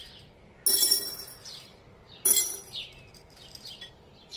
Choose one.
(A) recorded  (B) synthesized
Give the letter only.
A